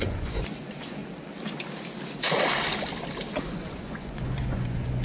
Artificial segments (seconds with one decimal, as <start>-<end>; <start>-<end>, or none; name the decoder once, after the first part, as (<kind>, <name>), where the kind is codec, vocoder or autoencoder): 0.0-1.0 (vocoder, Vocos); 3.3-5.0

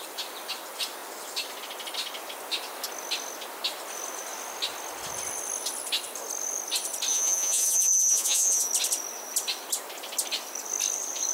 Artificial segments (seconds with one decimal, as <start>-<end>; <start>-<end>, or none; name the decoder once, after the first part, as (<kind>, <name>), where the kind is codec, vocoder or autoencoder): 7.1-8.7 (vocoder, Vocos)

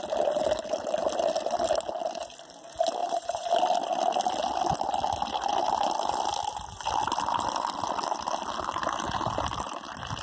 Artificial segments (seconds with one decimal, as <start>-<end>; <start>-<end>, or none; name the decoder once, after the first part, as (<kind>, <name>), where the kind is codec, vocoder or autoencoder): 3.0-3.5 (vocoder, Vocos)

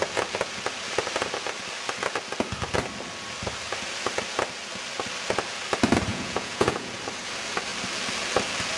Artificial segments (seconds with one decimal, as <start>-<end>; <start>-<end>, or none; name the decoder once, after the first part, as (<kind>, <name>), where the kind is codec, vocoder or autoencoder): 6.1-6.9 (vocoder, Vocos)

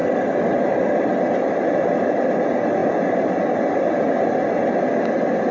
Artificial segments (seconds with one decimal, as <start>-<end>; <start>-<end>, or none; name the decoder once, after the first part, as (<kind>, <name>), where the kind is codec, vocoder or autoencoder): none

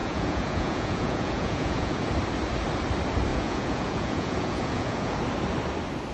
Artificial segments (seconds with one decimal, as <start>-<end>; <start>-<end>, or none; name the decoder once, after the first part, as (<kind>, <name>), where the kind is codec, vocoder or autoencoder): 0.0-2.1 (vocoder, Vocos); 3.3-5.2

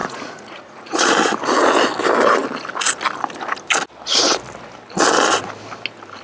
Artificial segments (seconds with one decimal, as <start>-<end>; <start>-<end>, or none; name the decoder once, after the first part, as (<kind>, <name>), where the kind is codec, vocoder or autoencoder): 0.0-1.1 (vocoder, Vocos)

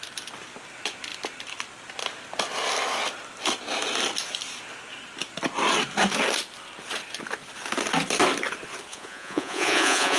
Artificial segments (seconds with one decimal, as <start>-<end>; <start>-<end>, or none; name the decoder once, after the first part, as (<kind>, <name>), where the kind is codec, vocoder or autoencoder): 8.9-10.2 (vocoder, Vocos)